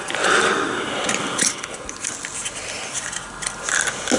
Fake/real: real